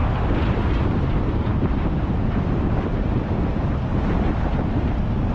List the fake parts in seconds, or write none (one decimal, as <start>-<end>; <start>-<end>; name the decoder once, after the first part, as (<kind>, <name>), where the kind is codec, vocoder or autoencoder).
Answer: 0.8-5.3 (vocoder, BigVGAN v2)